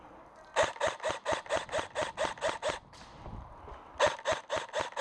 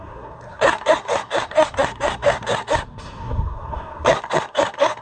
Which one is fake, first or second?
second